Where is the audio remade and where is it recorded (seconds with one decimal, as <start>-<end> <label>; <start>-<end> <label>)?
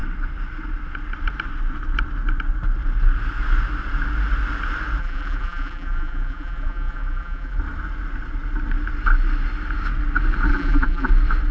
0.0-5.0 recorded; 5.0-7.6 remade; 7.6-10.5 recorded; 10.5-11.1 remade; 11.1-11.5 recorded